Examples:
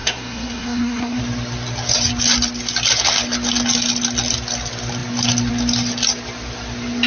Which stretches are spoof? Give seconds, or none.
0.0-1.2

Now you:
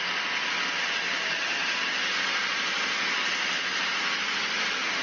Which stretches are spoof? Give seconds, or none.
none

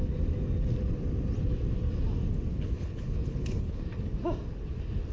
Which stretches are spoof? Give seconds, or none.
2.5-3.8